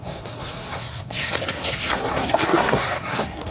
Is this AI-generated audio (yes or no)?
yes